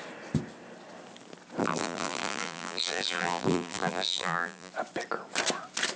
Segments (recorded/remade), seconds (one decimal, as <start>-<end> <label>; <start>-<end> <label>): 0.0-1.6 recorded; 1.6-4.7 remade; 4.7-6.0 recorded